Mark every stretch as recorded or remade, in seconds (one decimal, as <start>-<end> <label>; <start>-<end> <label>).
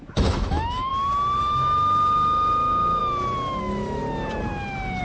0.0-0.9 remade; 0.9-1.4 recorded; 1.4-3.0 remade; 3.0-3.6 recorded; 3.6-4.0 remade; 4.0-5.0 recorded